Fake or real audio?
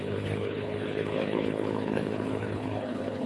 fake